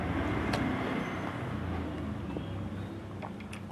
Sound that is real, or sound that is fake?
real